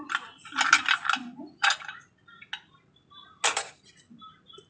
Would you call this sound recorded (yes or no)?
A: yes